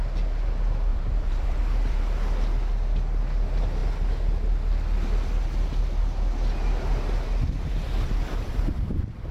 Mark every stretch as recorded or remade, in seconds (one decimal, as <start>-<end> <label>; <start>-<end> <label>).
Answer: 0.0-0.9 recorded; 0.9-2.0 remade; 2.0-9.3 recorded